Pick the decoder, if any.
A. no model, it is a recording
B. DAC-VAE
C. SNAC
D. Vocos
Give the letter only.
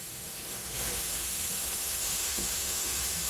B